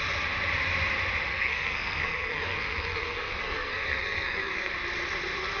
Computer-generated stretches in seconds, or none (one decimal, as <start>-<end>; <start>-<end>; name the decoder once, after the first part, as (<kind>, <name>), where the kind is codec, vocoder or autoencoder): 1.3-4.7 (codec, SNAC)